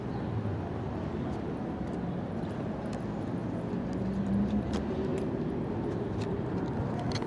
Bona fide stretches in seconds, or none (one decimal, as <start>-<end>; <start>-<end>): 0.0-7.3